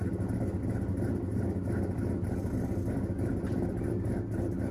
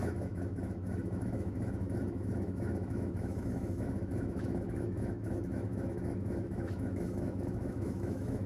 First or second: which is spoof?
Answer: second